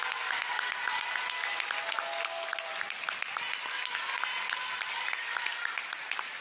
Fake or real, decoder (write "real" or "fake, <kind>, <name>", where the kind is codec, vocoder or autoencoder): real